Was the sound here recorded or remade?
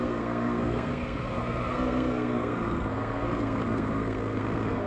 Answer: remade